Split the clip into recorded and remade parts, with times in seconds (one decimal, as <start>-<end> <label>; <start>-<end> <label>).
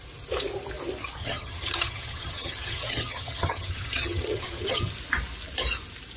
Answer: 0.0-1.2 recorded; 1.2-4.9 remade; 4.9-6.2 recorded